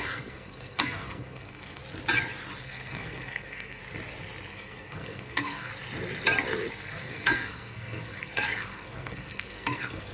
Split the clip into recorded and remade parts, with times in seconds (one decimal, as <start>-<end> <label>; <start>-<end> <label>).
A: 0.0-1.8 remade; 1.8-2.6 recorded; 2.6-3.8 remade; 3.8-4.5 recorded; 4.5-5.7 remade; 5.7-6.7 recorded; 6.7-10.1 remade